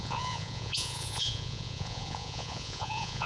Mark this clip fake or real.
fake